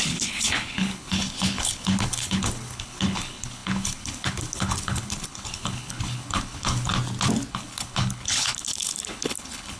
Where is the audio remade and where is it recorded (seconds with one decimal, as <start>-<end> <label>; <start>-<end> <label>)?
0.0-6.9 remade; 6.9-7.5 recorded; 7.5-9.8 remade